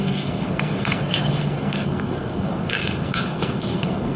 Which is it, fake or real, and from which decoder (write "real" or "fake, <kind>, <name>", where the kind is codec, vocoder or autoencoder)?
fake, codec, SNAC